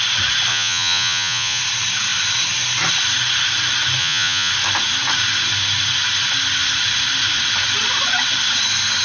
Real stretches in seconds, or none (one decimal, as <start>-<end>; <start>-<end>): 0.0-0.5; 1.6-4.0; 4.5-9.0